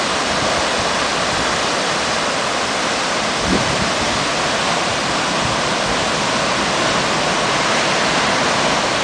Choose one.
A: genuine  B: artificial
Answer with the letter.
A